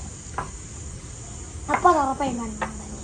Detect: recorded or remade recorded